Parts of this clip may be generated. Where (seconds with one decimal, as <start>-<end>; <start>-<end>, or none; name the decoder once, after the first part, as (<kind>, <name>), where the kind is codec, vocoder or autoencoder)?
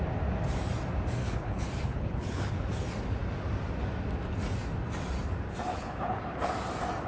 1.2-2.5 (codec, HILCodec); 5.7-6.5